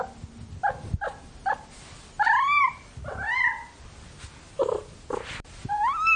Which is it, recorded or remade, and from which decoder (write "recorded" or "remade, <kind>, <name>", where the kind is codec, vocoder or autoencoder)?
recorded